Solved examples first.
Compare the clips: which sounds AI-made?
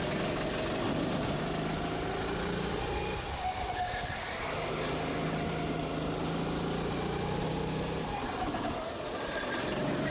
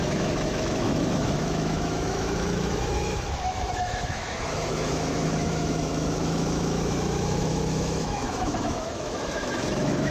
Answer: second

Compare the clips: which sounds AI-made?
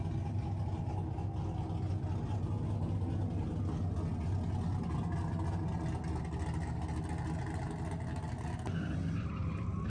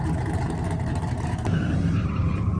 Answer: second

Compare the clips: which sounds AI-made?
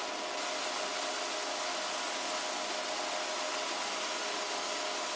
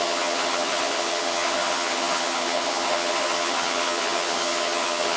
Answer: second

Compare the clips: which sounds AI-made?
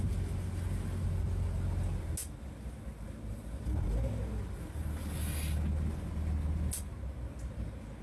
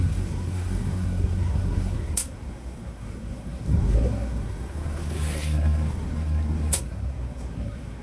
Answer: second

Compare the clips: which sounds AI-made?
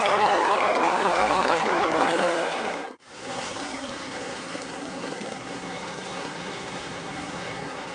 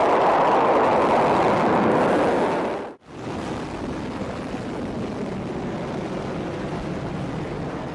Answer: first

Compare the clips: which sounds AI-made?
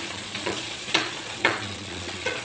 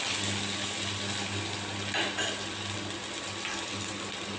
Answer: first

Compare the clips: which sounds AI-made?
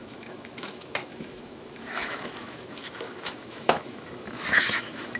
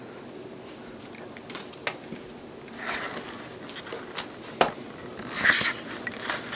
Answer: first